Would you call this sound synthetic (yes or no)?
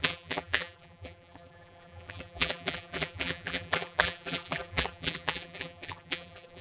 yes